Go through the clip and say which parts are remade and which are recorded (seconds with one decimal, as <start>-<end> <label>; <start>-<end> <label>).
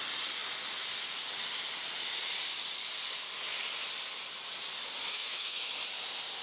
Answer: 0.0-5.1 recorded; 5.1-5.7 remade; 5.7-6.4 recorded